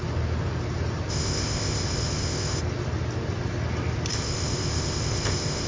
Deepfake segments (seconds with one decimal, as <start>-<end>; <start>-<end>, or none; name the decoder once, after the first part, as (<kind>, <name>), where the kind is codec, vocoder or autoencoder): 1.1-2.6 (codec, ZipCodec); 4.1-5.7